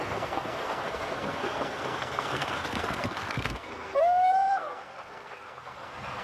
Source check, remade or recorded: remade